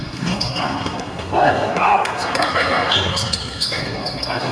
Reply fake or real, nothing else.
fake